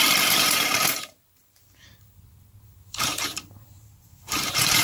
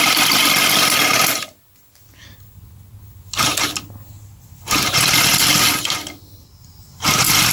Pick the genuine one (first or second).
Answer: second